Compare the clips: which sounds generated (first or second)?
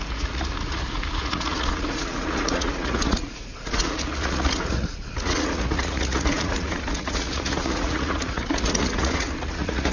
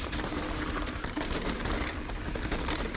first